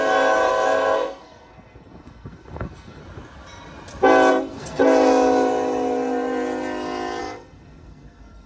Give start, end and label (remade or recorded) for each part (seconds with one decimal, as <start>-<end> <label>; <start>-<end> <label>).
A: 0.0-3.0 remade; 3.0-4.3 recorded; 4.3-4.8 remade; 4.8-7.2 recorded; 7.2-8.5 remade